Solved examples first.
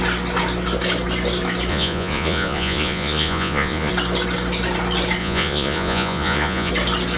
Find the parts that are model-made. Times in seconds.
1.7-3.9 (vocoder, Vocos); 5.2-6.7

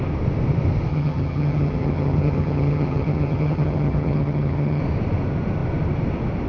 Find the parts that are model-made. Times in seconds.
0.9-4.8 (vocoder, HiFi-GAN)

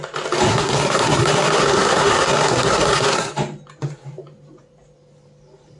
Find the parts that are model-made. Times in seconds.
0.5-3.3 (codec, SNAC)

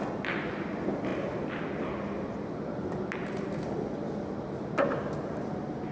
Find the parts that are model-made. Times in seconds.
none

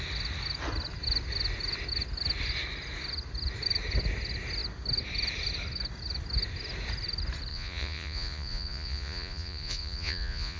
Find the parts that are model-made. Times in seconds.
7.5-10.6 (vocoder, Vocos)